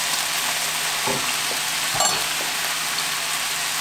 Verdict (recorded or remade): recorded